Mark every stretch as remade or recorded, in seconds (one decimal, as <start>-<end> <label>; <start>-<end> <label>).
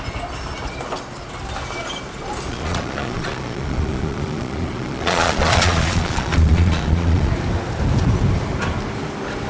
0.0-2.5 recorded; 2.5-7.3 remade; 7.3-9.5 recorded